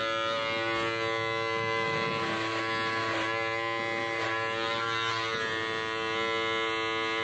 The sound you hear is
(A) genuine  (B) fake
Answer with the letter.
A